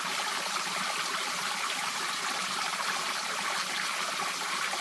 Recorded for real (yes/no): yes